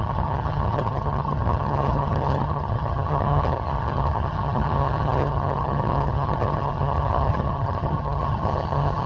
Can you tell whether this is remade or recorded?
remade